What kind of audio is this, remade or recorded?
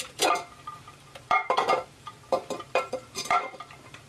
remade